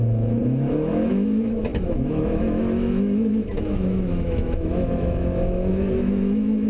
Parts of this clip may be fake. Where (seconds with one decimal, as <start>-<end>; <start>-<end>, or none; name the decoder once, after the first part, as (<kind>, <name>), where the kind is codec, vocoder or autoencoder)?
0.0-6.7 (autoencoder, DAC-VAE)

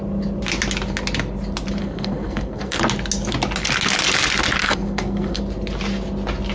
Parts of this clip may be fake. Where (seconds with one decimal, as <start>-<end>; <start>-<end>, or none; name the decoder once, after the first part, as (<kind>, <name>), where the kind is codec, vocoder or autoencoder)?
1.8-2.8 (codec, SNAC); 4.6-5.4

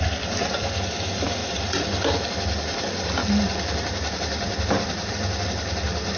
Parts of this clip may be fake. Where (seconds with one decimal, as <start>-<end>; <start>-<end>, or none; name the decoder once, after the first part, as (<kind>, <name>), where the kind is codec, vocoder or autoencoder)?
none

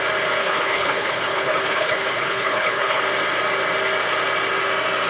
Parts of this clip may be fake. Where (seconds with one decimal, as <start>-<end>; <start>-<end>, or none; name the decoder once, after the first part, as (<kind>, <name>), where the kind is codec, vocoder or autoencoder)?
0.4-3.0 (codec, HILCodec)

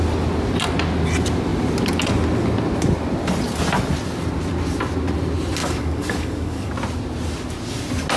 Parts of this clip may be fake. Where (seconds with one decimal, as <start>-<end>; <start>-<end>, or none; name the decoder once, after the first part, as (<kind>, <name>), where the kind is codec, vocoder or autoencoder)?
5.6-6.7 (codec, DAC)

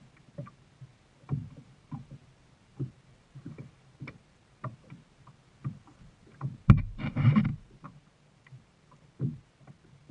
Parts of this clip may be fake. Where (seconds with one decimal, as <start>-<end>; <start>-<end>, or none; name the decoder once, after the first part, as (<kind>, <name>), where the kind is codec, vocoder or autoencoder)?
none

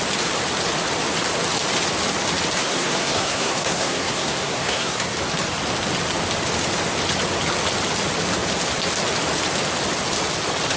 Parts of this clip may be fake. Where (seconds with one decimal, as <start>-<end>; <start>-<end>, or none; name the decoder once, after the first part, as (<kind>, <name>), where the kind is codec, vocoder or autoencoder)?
2.6-5.1 (codec, SNAC)